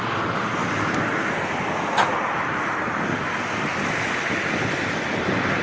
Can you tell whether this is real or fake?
real